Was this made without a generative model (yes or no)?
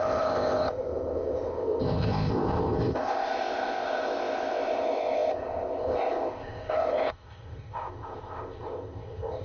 no